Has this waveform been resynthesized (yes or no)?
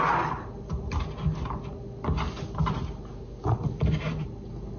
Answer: no